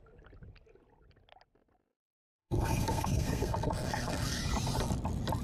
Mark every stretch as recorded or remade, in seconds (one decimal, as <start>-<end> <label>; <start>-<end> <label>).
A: 0.0-2.3 recorded; 2.3-4.4 remade; 4.4-5.4 recorded